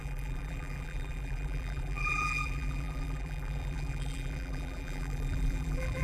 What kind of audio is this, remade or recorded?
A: remade